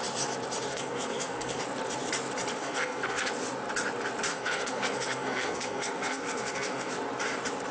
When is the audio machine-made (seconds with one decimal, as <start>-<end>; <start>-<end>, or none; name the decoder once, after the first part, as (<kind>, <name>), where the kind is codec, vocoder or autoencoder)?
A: 0.7-1.6 (codec, SNAC); 2.6-3.3; 4.3-6.9